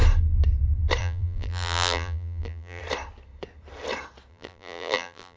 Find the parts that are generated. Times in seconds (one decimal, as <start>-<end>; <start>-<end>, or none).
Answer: 1.0-2.8; 4.3-5.4